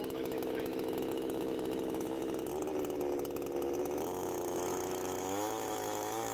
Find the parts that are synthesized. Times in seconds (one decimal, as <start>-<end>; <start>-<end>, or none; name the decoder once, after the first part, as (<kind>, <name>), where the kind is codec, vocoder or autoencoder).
0.0-2.5 (autoencoder, DAC-VAE); 3.8-6.3